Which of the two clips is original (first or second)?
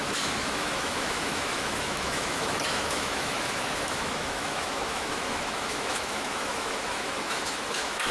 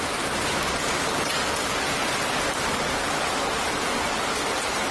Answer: second